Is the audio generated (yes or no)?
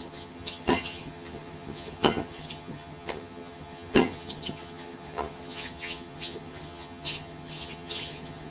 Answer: yes